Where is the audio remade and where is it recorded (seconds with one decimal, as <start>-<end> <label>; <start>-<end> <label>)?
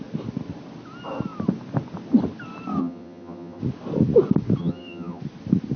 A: 0.0-2.8 recorded; 2.8-3.6 remade; 3.6-4.6 recorded; 4.6-5.2 remade; 5.2-5.8 recorded